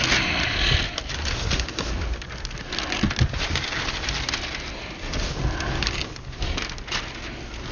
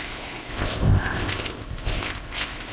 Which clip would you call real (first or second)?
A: first